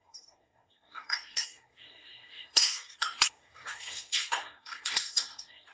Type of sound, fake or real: fake